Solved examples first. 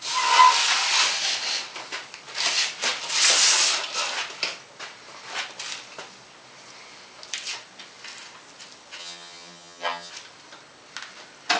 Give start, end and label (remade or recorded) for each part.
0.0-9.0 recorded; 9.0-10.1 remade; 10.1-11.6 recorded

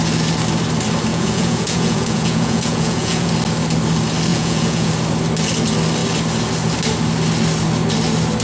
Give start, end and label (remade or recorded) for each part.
0.0-1.1 recorded; 1.1-3.3 remade; 3.3-4.3 recorded; 4.3-4.9 remade; 4.9-8.4 recorded

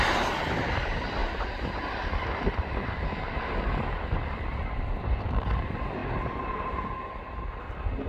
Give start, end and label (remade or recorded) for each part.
0.0-6.0 remade; 6.0-8.1 recorded

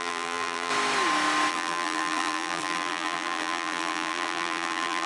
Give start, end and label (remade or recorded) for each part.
0.0-0.7 remade; 0.7-1.5 recorded; 1.5-5.1 remade

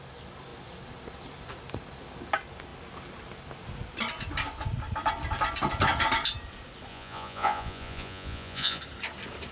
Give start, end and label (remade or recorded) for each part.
0.0-6.9 recorded; 6.9-8.8 remade; 8.8-9.5 recorded

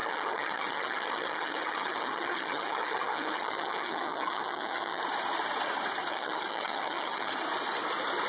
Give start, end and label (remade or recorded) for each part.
0.0-5.0 remade; 5.0-6.1 recorded; 6.1-7.3 remade; 7.3-8.3 recorded

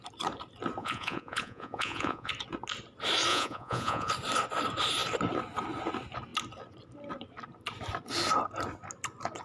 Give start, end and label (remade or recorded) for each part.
0.0-0.8 recorded; 0.8-2.3 remade; 2.3-3.3 recorded; 3.3-4.1 remade; 4.1-9.4 recorded